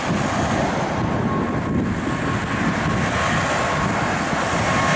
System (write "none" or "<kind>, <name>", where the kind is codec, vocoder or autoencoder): none